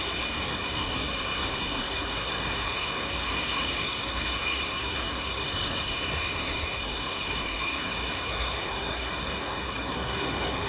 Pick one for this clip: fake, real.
fake